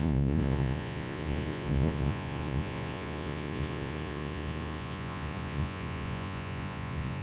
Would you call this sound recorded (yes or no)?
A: no